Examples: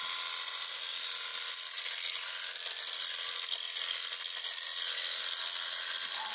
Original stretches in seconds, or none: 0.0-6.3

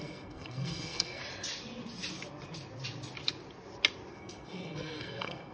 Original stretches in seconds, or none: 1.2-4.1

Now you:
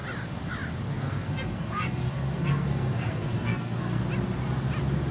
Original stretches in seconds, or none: 0.0-0.9; 4.0-5.1

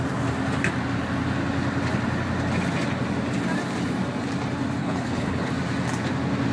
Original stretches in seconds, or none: 0.0-4.8; 5.5-6.5

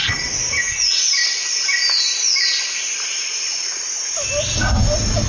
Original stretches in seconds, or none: 0.0-5.3

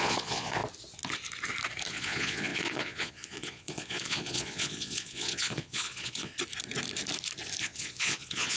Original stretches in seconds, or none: 0.6-1.9; 6.3-7.6

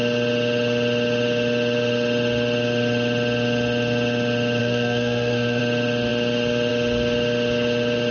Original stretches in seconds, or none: 0.0-4.6; 5.6-8.1

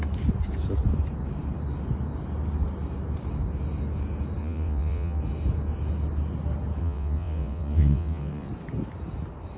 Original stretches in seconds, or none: 0.0-4.4; 5.2-6.8; 8.5-9.6